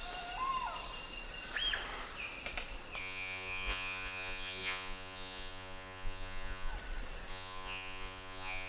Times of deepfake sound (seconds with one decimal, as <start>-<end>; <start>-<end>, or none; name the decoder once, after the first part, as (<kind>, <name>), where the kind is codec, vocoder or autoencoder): 3.0-6.7 (vocoder, Vocos); 7.3-8.7